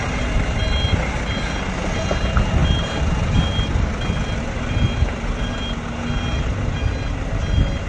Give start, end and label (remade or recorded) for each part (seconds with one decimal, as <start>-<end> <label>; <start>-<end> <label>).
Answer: 0.0-7.9 recorded